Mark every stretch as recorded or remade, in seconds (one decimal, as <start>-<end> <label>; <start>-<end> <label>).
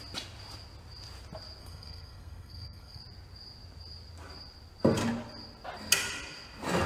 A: 0.0-1.6 recorded; 1.6-3.0 remade; 3.0-6.9 recorded